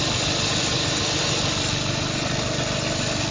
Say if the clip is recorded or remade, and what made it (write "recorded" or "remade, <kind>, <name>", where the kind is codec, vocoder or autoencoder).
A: recorded